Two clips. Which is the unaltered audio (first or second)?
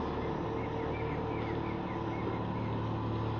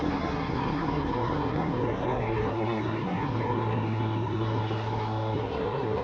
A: first